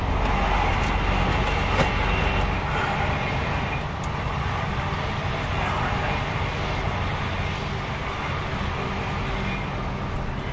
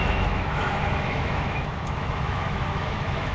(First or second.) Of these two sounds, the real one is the first